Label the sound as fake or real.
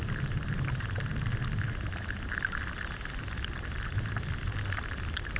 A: real